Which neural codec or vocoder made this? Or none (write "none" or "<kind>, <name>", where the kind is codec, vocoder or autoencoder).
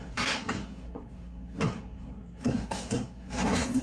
codec, SNAC